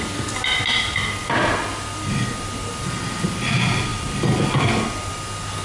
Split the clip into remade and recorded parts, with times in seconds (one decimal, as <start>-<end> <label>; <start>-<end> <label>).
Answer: 0.0-5.6 recorded